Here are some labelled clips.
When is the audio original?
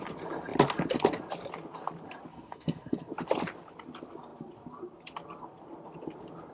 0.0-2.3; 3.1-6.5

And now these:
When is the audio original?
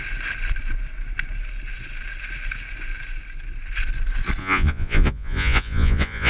0.0-4.4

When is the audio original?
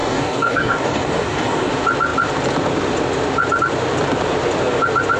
1.7-5.2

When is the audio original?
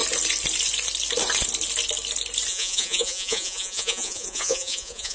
0.0-2.5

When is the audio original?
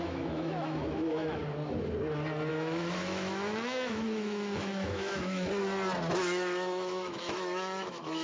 1.4-2.5; 5.6-6.1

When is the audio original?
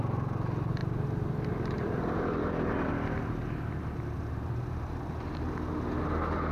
0.0-0.8; 2.9-3.8; 5.4-6.5